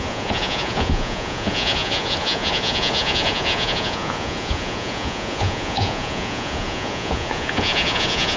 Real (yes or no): no